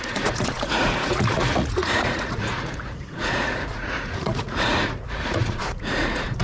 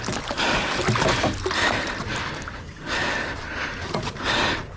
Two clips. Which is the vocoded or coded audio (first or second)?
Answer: first